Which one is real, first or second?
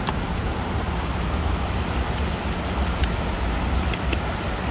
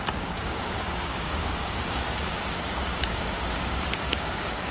first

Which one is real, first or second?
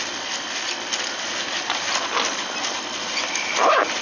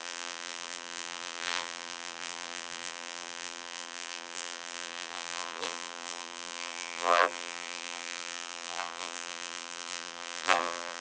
first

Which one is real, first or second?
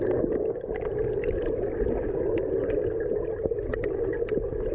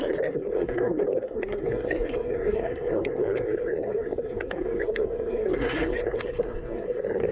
first